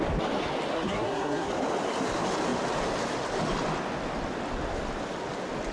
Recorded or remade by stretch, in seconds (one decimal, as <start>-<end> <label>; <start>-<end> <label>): 0.0-0.7 recorded; 0.7-1.5 remade; 1.5-5.7 recorded